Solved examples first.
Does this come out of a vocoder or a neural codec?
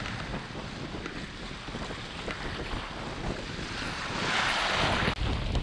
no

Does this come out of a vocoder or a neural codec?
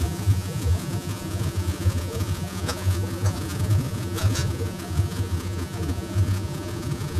yes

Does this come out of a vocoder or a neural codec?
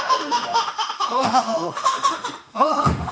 yes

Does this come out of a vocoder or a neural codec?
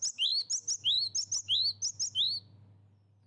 no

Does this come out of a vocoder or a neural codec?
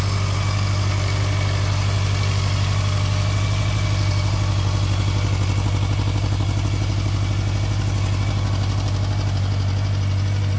no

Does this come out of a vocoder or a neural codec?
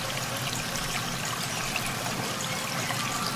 no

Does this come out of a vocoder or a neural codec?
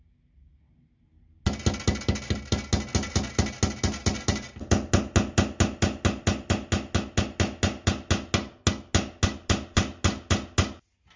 no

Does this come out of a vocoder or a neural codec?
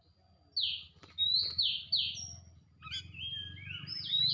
no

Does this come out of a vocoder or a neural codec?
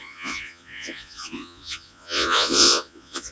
yes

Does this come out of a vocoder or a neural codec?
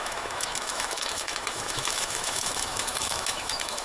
yes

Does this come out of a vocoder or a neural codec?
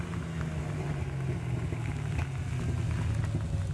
no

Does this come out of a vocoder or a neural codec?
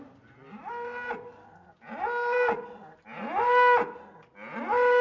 no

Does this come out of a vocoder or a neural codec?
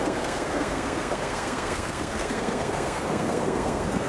yes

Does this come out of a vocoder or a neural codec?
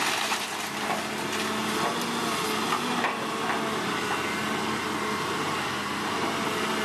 no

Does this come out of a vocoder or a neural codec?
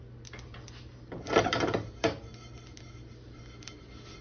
no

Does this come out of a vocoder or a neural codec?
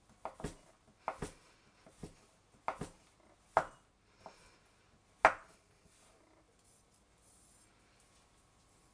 no